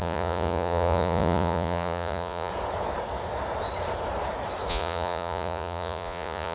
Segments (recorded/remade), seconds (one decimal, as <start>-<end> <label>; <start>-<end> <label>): 0.0-2.5 remade; 2.5-4.7 recorded; 4.7-6.5 remade